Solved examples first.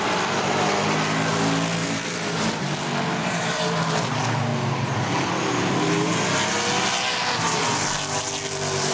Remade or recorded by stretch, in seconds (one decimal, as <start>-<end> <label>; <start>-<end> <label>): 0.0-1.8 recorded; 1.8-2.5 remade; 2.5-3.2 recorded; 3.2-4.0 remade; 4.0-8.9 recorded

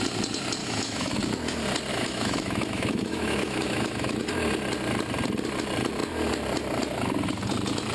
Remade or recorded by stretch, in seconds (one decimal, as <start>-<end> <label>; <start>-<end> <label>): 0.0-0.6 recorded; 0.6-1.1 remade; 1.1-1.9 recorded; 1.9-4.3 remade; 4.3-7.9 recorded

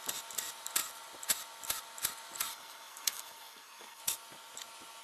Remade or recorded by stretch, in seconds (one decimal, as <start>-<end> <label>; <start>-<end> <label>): 0.0-2.5 recorded; 2.5-4.0 remade; 4.0-5.0 recorded

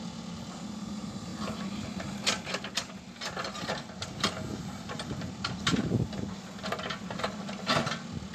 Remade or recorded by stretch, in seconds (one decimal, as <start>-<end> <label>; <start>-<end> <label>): 0.0-8.3 recorded

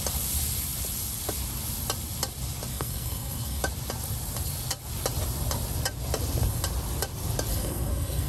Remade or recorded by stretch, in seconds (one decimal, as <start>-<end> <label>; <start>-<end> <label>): 0.0-2.7 recorded; 2.7-3.6 remade; 3.6-7.5 recorded; 7.5-8.3 remade

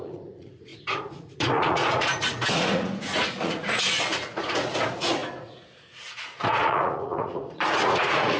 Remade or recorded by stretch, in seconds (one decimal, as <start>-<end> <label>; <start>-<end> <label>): 0.0-8.4 remade

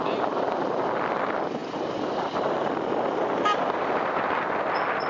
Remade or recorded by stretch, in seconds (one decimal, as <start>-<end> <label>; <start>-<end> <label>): 0.0-5.1 recorded